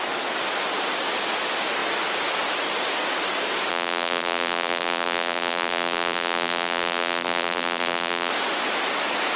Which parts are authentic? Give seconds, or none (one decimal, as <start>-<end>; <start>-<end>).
0.0-3.7; 8.3-9.4